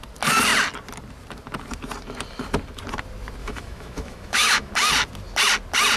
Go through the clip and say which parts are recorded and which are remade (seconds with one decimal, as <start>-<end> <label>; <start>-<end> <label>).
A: 0.0-3.4 recorded; 3.4-4.7 remade; 4.7-6.0 recorded